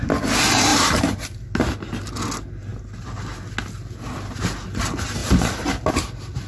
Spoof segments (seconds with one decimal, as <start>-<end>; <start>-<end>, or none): 0.7-1.2; 5.2-5.9